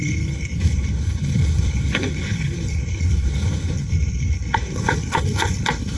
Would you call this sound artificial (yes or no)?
yes